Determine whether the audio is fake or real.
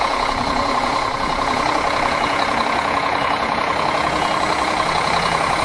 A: fake